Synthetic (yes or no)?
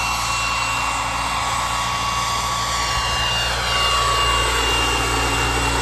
no